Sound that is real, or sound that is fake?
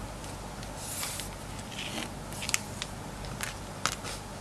real